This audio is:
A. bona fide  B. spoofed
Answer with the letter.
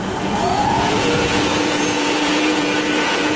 B